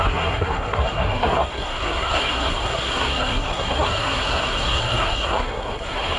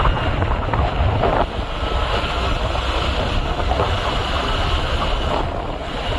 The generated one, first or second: first